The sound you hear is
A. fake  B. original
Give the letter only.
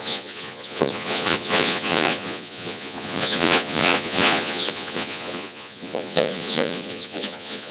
A